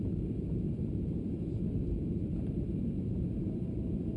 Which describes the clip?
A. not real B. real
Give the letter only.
A